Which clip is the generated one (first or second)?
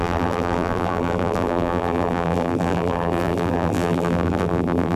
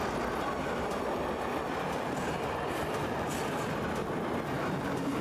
first